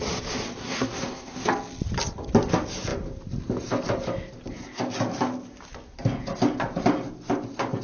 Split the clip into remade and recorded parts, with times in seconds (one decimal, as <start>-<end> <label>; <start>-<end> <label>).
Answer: 0.0-0.6 recorded; 0.6-1.5 remade; 1.5-7.8 recorded